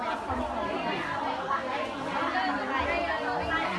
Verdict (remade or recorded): recorded